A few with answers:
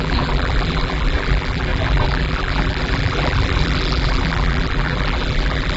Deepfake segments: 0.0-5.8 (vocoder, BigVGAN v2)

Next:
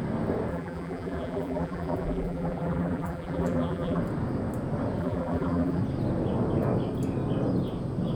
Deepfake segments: 0.5-4.0 (vocoder, BigVGAN v2); 5.0-5.8

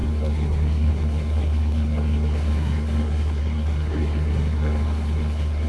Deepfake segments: 0.0-5.7 (codec, SNAC)

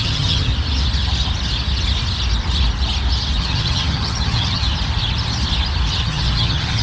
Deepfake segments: 0.0-0.5 (vocoder, HiFi-GAN); 3.4-4.7; 6.0-6.8